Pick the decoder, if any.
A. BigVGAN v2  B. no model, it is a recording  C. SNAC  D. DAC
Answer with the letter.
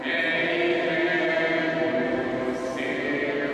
B